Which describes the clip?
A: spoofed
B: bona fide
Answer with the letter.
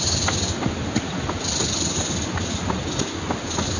B